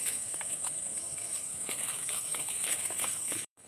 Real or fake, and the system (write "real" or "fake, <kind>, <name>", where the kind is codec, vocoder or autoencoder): fake, codec, SNAC